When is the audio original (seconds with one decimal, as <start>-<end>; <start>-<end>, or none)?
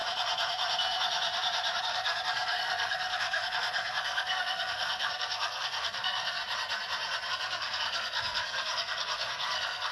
0.0-1.8; 6.4-7.3